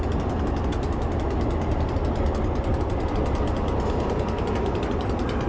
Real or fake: real